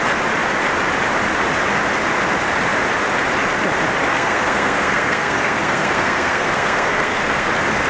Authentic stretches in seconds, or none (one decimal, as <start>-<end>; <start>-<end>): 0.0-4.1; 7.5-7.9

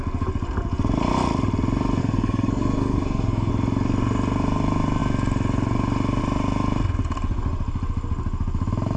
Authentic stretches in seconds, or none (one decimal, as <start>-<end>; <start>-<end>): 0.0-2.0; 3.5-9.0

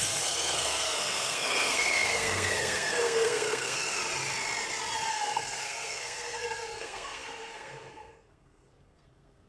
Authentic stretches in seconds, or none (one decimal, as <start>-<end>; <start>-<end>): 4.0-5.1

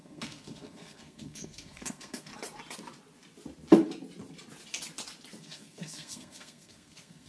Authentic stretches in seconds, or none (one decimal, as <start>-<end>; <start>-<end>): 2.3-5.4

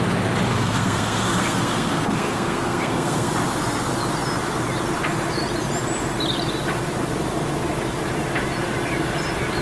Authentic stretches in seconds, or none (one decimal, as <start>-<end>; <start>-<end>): 0.0-0.5; 3.3-9.6

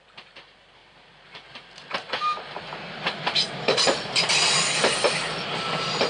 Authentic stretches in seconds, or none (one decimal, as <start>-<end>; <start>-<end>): 0.0-6.1